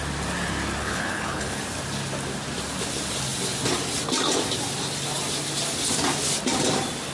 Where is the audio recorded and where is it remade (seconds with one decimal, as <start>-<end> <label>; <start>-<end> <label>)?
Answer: 0.0-0.8 recorded; 0.8-1.6 remade; 1.6-7.1 recorded